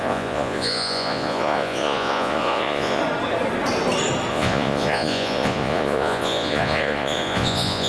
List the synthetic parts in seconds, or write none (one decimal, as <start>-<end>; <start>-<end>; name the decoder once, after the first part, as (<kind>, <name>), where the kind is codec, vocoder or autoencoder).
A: 0.0-3.0 (vocoder, Vocos); 4.3-7.9